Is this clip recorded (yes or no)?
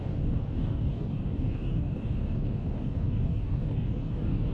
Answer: no